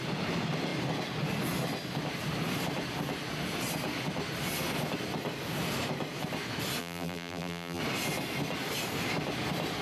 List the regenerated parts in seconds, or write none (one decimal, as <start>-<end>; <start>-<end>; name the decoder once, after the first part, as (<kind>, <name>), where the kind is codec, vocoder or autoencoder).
6.8-7.8 (vocoder, BigVGAN v2)